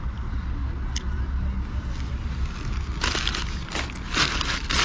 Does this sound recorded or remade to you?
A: recorded